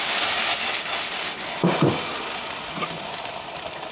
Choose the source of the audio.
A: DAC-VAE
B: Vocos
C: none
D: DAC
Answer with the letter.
C